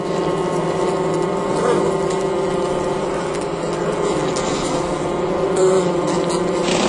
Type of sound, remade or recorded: recorded